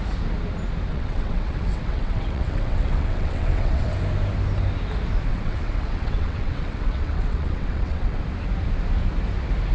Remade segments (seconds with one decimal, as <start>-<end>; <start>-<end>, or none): 0.9-3.9; 5.3-8.2